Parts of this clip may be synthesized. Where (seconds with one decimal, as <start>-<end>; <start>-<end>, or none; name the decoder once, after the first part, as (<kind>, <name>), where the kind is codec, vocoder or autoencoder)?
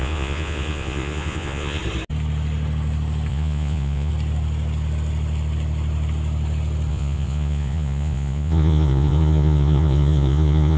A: 0.0-1.8 (vocoder, Vocos); 3.3-4.1; 6.9-10.8